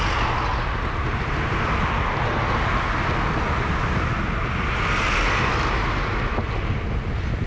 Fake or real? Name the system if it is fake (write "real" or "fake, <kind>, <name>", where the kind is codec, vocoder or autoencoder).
real